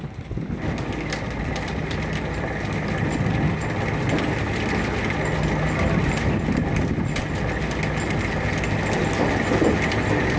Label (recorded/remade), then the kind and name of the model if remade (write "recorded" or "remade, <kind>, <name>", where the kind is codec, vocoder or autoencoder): recorded